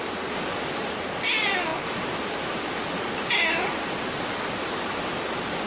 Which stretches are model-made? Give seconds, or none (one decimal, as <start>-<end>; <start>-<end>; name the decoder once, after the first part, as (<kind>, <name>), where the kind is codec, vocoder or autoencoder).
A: none